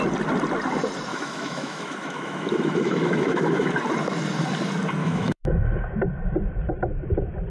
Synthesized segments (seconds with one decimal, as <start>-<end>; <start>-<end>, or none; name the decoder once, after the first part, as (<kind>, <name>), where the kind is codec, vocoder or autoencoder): 1.1-3.7 (autoencoder, DAC-VAE); 5.0-5.6